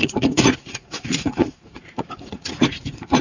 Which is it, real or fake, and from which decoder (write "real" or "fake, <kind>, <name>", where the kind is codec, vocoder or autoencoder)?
fake, vocoder, Vocos